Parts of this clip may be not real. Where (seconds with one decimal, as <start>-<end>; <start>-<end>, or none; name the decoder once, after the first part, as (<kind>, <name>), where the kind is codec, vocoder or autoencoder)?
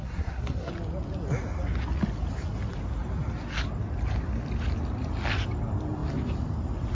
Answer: 0.0-0.7 (codec, SNAC)